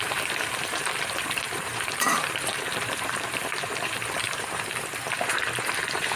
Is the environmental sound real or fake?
fake